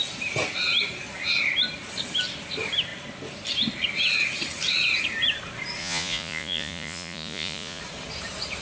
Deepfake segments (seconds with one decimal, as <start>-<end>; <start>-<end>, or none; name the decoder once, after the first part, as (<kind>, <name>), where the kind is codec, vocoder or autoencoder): 5.8-7.8 (vocoder, Vocos)